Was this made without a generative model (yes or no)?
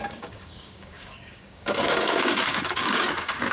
no